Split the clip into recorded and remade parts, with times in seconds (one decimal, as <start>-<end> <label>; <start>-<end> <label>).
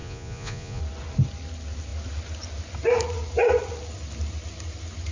0.0-0.8 remade; 0.8-5.1 recorded